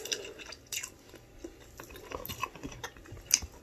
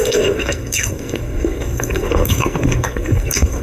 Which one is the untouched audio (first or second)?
first